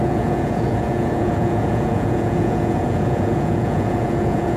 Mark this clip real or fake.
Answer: fake